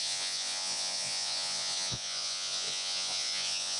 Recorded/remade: remade